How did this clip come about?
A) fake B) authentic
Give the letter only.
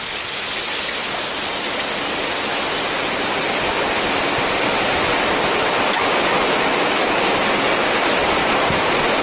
B